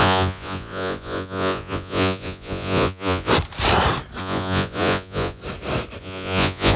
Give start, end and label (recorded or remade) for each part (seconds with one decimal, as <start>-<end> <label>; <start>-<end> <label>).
0.0-3.3 remade; 3.3-4.2 recorded; 4.2-5.4 remade; 5.4-6.0 recorded; 6.0-6.8 remade